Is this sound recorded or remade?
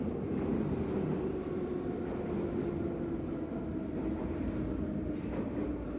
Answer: recorded